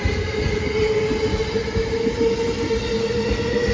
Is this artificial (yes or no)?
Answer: no